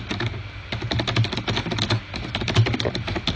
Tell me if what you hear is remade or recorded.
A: recorded